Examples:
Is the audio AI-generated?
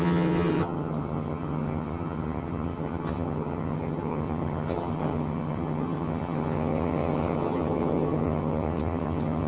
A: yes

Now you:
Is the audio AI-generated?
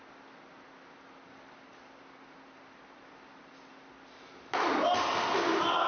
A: no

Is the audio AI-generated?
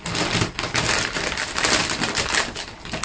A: no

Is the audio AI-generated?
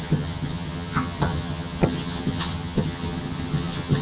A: yes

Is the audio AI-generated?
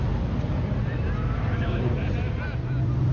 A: no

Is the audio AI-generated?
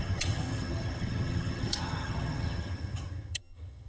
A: yes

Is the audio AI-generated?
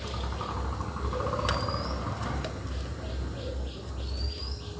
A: no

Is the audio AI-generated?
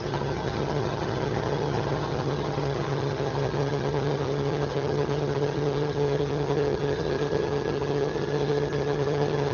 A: yes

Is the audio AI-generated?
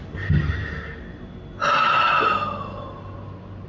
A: no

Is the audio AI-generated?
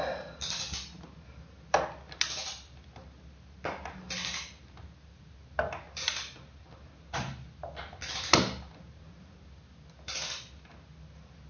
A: no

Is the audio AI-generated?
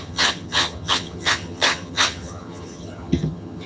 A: yes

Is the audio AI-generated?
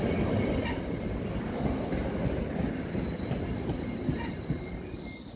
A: no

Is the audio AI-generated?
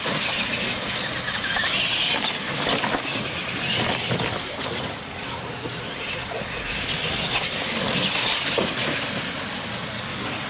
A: no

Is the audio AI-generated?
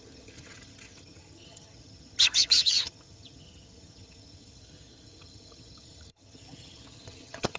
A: yes